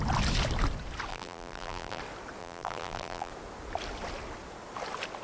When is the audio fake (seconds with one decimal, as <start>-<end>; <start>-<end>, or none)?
1.1-2.0; 2.4-3.3

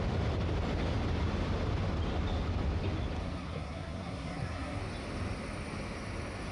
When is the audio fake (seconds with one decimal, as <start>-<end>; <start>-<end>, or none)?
3.2-4.8

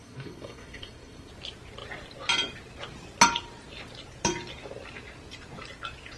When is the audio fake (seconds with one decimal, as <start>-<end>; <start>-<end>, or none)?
0.0-1.3

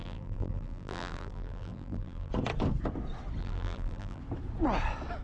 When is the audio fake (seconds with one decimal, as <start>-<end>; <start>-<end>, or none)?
0.0-2.3; 3.4-4.2

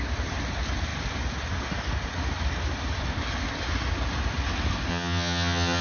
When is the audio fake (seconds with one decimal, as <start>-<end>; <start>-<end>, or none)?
4.9-5.8